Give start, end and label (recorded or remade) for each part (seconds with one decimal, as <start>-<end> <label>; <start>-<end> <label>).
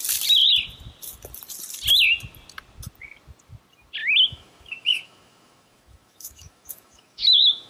0.0-4.0 recorded; 4.0-7.7 remade